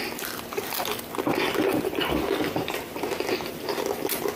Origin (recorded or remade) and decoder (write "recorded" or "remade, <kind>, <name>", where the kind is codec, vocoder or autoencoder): remade, vocoder, BigVGAN v2